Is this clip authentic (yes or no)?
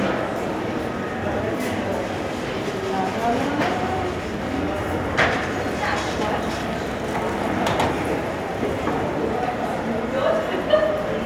yes